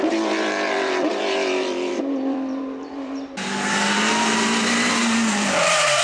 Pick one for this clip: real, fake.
fake